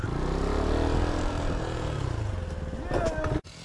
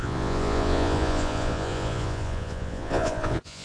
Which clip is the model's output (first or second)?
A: second